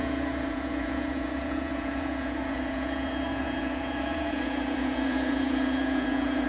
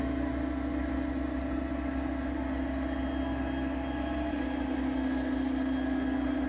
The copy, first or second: first